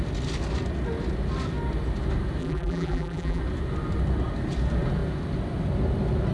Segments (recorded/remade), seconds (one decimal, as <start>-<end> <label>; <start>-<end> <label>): 0.0-2.4 recorded; 2.4-3.4 remade; 3.4-6.3 recorded

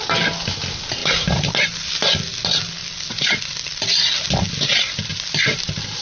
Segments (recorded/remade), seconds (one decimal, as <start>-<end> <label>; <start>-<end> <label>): 0.0-1.0 recorded; 1.0-1.5 remade; 1.5-5.1 recorded; 5.1-6.0 remade

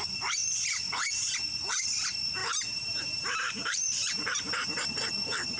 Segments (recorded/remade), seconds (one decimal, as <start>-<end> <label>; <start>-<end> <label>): 0.0-2.4 recorded; 2.4-4.9 remade; 4.9-5.6 recorded

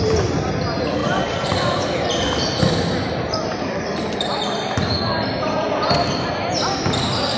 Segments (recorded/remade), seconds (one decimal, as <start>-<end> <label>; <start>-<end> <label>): 0.0-1.0 recorded; 1.0-4.4 remade; 4.4-7.4 recorded

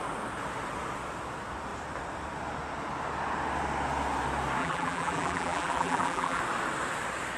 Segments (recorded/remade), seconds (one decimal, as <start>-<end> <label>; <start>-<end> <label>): 0.0-4.6 recorded; 4.6-6.4 remade; 6.4-7.4 recorded

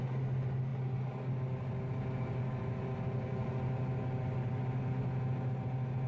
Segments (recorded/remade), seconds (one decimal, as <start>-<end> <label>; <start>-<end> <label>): 0.0-6.1 recorded

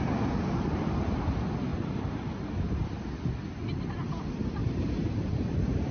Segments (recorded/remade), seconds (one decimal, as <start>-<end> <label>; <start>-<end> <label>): 0.0-4.6 recorded; 4.6-5.9 remade